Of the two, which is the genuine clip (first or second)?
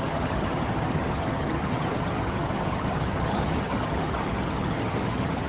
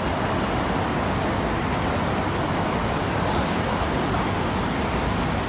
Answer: second